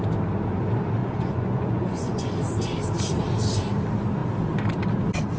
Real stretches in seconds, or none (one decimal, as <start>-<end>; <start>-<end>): 0.0-1.0; 2.3-5.4